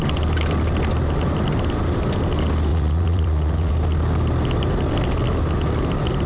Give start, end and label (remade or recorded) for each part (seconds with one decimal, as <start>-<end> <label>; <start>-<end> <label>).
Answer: 0.0-2.7 recorded; 2.7-3.7 remade; 3.7-6.3 recorded